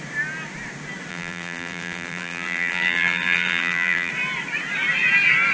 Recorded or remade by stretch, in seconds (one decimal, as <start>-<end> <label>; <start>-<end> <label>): 0.0-1.1 recorded; 1.1-4.1 remade; 4.1-5.5 recorded